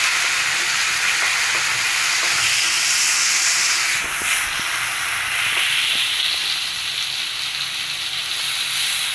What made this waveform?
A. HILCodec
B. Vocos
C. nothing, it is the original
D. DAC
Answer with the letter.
C